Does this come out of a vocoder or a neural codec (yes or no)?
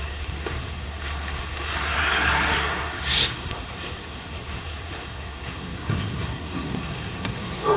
yes